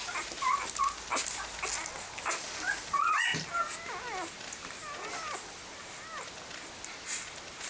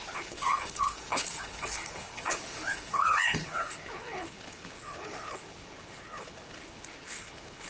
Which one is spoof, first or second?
second